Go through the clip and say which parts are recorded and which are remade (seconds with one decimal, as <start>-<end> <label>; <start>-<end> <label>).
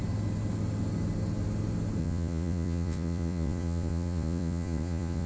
0.0-2.0 recorded; 2.0-5.3 remade